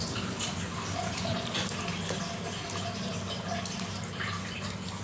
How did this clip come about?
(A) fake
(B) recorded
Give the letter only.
B